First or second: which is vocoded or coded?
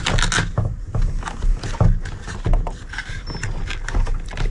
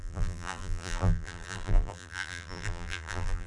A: second